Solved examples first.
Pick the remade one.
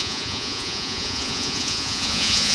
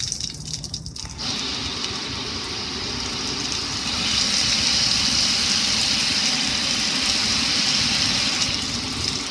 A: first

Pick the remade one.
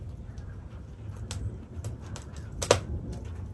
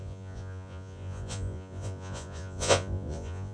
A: second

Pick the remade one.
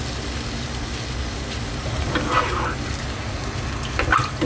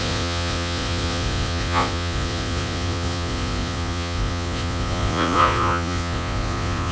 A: second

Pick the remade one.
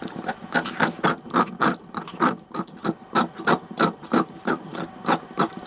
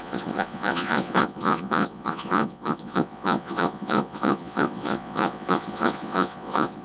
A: second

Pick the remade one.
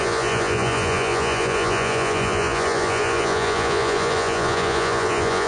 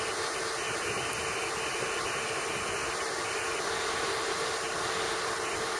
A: first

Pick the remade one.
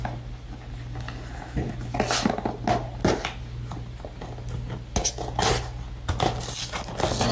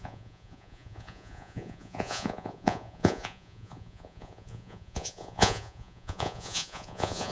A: second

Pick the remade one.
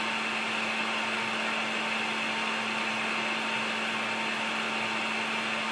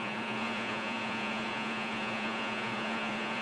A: second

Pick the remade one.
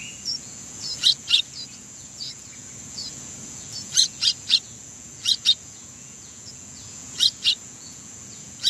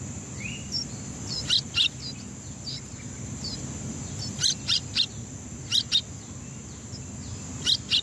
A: first